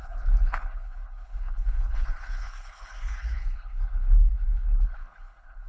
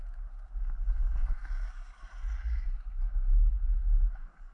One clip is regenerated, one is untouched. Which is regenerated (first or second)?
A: first